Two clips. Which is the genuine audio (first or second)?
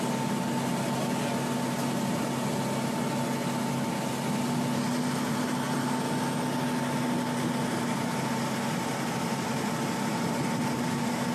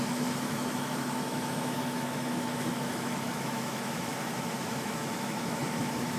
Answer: first